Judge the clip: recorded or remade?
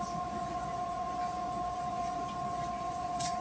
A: remade